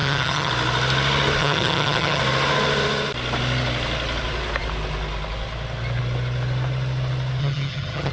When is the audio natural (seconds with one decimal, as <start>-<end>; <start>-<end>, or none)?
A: 0.5-1.4; 2.2-7.4